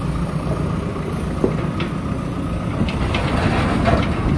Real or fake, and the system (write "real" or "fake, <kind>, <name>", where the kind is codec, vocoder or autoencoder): real